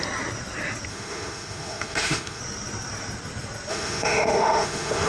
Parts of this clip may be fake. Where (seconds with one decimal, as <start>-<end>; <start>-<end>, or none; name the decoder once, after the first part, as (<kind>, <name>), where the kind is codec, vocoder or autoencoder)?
0.9-2.4 (autoencoder, DAC-VAE); 3.7-5.1